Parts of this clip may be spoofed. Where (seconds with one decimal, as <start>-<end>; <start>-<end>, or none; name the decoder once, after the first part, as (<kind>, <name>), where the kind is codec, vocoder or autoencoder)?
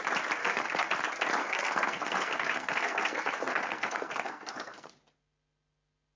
0.4-0.9 (codec, SNAC); 1.4-4.9